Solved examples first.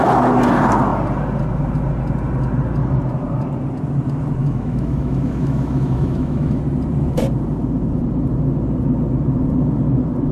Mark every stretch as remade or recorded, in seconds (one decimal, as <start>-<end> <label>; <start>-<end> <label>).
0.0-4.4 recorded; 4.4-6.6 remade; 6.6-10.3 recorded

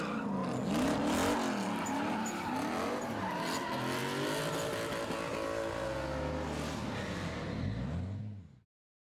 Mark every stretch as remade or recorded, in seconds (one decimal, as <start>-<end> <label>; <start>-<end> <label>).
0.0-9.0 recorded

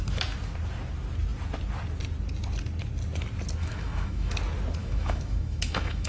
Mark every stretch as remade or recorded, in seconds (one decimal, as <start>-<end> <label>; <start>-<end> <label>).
0.0-3.6 recorded; 3.6-4.3 remade; 4.3-4.8 recorded; 4.8-6.1 remade

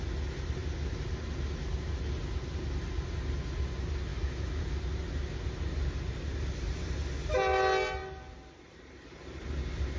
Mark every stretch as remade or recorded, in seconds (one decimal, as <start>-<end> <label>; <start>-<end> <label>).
0.0-4.1 recorded; 4.1-4.6 remade; 4.6-10.0 recorded